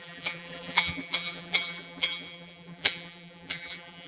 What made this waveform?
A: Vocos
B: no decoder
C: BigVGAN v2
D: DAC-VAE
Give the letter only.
C